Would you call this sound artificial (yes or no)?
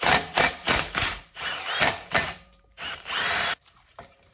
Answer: yes